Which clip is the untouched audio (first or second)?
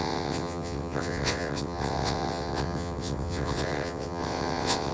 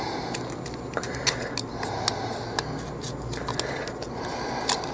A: second